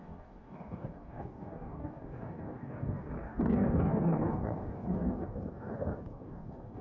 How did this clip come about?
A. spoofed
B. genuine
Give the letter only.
A